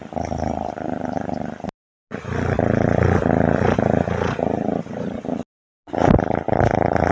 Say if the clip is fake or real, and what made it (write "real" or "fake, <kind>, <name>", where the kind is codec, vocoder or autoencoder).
real